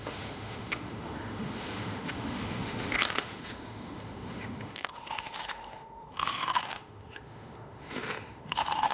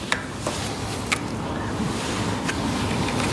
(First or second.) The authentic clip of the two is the second